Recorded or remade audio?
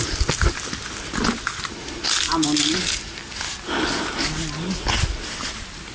recorded